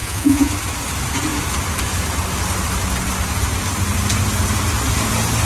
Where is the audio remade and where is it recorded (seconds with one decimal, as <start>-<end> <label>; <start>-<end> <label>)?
0.0-0.5 remade; 0.5-5.5 recorded